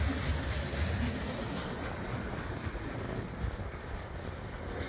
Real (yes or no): yes